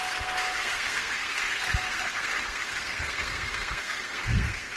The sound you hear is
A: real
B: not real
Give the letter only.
B